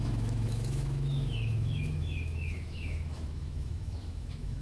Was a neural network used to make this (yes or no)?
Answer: yes